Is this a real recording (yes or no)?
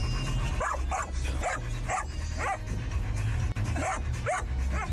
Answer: yes